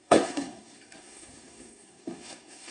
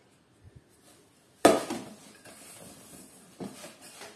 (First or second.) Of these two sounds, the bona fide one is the second